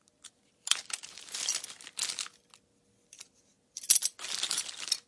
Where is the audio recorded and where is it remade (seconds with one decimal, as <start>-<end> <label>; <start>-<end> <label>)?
0.0-5.1 recorded